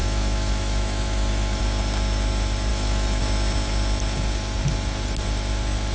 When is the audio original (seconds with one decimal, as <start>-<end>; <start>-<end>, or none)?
1.6-2.7; 3.2-5.9